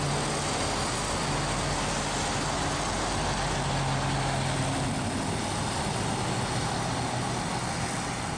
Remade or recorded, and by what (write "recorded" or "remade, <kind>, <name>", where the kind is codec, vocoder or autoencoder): recorded